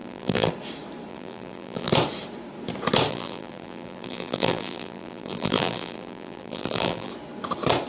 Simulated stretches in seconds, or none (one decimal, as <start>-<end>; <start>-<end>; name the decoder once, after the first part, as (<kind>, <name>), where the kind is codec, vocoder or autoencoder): 0.0-0.5 (vocoder, BigVGAN v2); 1.1-1.9; 3.1-7.1